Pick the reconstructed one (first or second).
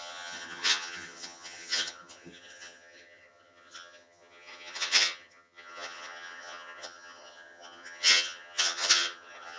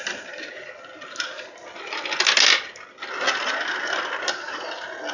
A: first